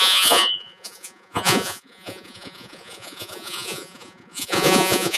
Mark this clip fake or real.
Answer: fake